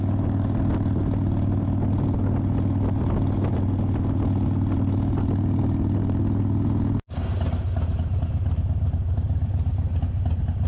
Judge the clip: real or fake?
real